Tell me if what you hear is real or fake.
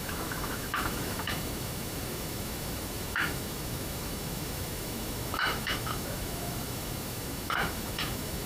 fake